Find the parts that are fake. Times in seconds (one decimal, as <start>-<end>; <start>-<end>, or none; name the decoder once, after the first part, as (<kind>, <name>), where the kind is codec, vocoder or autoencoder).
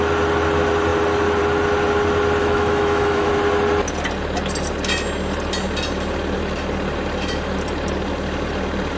2.4-3.3 (autoencoder, DAC-VAE)